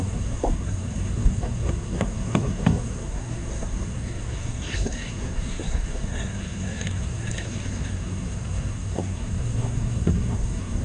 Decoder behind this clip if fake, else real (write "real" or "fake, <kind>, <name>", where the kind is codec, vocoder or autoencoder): fake, codec, SNAC